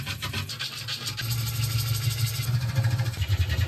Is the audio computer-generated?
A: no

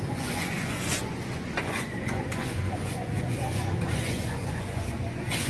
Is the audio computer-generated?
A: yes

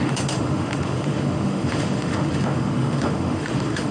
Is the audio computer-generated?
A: yes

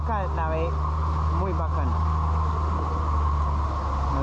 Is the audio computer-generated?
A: no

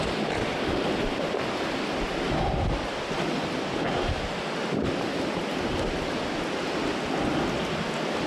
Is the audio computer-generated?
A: no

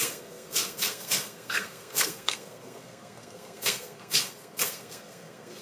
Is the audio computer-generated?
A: yes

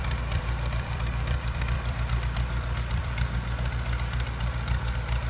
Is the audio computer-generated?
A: yes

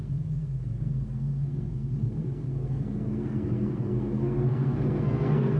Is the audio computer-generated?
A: yes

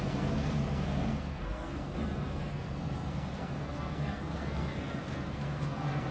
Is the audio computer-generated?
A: yes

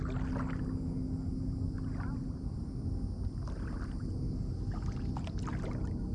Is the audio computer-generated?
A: no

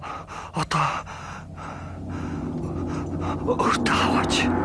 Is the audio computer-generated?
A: no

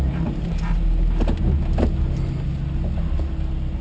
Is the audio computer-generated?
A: no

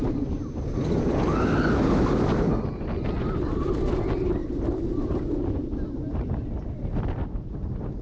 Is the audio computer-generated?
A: no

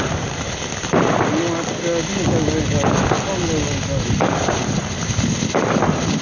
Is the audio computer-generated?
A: no